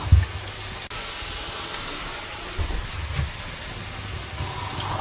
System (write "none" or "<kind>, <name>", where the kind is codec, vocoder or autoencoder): none